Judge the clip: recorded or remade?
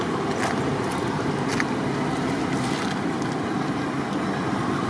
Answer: recorded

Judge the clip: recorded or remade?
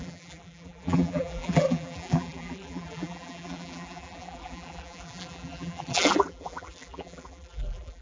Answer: remade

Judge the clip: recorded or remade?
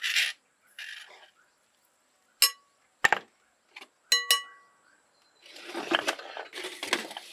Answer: recorded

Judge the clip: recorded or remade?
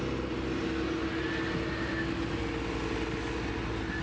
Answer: recorded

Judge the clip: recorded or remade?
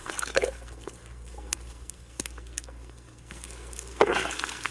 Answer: remade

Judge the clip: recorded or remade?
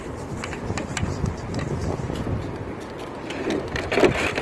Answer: recorded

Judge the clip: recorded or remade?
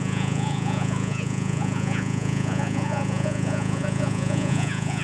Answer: remade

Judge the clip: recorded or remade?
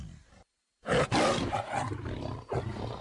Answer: recorded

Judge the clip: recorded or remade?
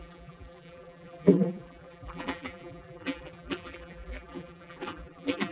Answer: remade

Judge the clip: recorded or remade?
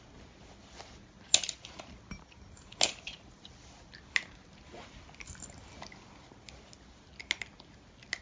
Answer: recorded